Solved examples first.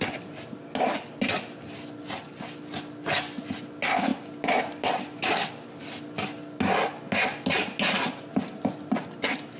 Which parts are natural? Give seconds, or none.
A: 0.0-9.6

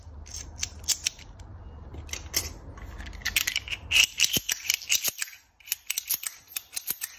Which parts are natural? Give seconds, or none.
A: 0.0-7.2

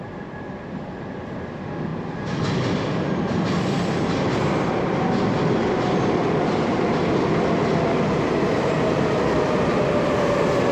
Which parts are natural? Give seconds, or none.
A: 0.0-10.7